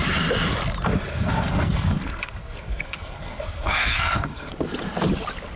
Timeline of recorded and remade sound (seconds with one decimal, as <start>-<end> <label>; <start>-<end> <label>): 0.0-1.1 recorded; 1.1-4.5 remade; 4.5-5.6 recorded